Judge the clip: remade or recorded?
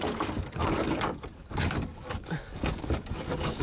remade